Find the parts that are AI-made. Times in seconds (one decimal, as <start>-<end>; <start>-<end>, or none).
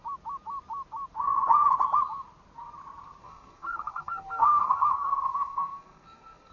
3.2-6.5